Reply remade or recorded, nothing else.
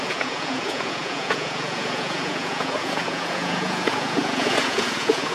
remade